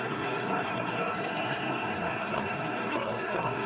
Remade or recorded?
remade